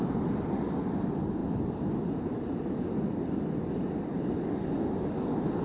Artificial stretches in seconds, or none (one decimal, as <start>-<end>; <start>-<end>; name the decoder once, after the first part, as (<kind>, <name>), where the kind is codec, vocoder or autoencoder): none